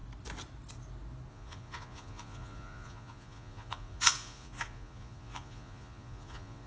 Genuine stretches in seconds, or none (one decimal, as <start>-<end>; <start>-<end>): 0.0-1.3